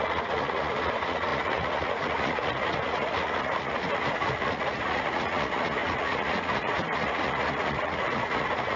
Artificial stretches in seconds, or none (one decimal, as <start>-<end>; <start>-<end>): 0.0-8.8